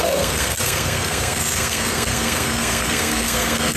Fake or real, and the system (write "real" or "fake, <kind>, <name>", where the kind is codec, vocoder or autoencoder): fake, codec, SNAC